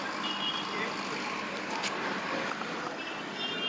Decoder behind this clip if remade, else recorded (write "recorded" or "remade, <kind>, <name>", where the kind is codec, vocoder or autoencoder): recorded